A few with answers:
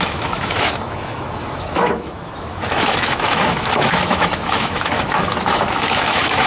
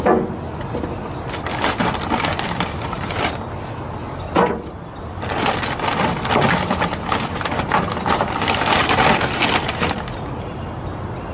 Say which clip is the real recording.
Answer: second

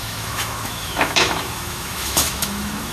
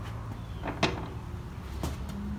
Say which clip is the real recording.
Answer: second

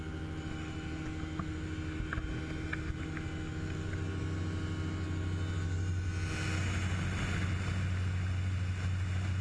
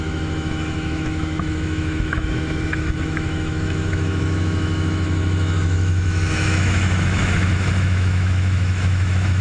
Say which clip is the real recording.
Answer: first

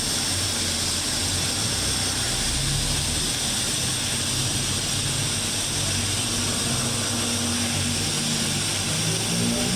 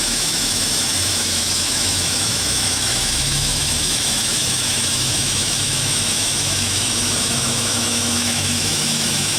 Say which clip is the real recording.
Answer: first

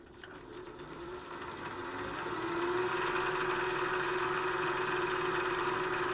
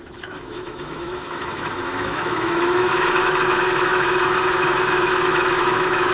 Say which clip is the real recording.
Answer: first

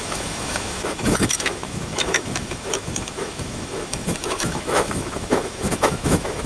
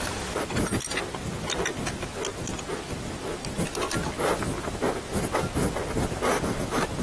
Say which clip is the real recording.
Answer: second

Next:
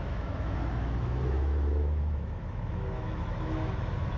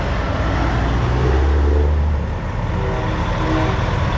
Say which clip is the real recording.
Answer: second